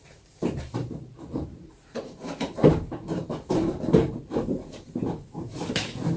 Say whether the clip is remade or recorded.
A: remade